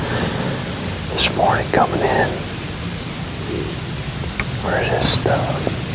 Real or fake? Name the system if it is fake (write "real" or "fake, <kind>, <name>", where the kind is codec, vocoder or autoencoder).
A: real